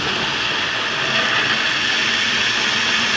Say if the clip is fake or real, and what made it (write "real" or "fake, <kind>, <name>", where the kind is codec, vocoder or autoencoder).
real